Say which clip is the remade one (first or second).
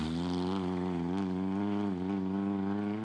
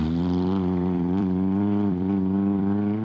second